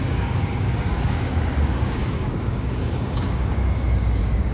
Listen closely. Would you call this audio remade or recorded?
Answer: remade